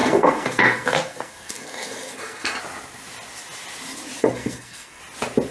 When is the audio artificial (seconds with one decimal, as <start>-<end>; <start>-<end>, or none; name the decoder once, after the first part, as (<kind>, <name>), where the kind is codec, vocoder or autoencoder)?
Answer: 0.0-2.6 (codec, SNAC); 4.2-5.0